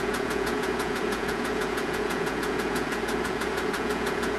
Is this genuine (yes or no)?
no